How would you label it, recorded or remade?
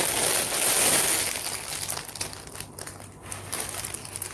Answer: recorded